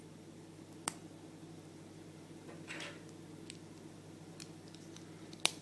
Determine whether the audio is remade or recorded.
remade